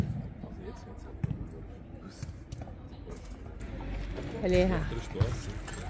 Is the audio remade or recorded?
recorded